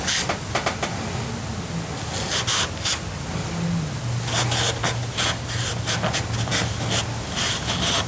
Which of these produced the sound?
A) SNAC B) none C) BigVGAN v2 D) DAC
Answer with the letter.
B